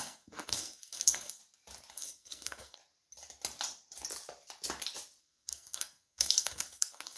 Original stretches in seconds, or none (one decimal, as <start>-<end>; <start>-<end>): 1.4-1.9; 2.8-5.2